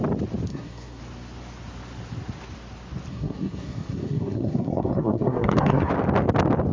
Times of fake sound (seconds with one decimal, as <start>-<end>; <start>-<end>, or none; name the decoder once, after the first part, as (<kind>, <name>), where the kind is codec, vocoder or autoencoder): 0.5-1.0 (codec, SNAC); 3.1-5.9